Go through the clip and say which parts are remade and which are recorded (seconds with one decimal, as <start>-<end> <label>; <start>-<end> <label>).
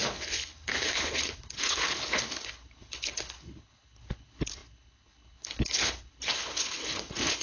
0.0-7.4 remade